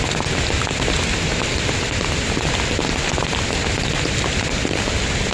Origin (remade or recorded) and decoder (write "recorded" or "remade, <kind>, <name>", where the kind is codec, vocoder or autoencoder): recorded